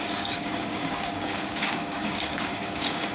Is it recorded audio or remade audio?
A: remade